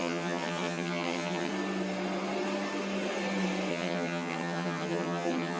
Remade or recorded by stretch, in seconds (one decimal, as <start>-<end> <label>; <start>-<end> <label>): 0.0-1.5 remade; 1.5-3.7 recorded; 3.7-5.6 remade

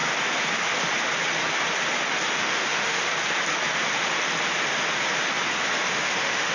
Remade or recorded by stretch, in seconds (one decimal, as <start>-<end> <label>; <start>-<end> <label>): 0.0-2.4 recorded; 2.4-3.1 remade; 3.1-5.9 recorded; 5.9-6.5 remade